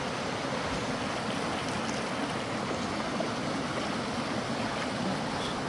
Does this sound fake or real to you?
real